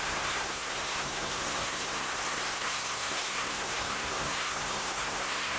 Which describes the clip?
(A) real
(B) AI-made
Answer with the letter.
B